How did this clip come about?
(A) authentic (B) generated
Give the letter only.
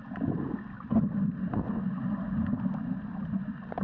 A